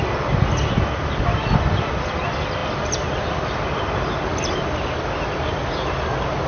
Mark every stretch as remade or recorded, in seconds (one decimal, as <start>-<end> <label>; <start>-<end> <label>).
0.0-6.5 recorded